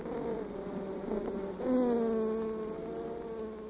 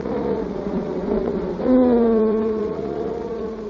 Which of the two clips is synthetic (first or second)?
second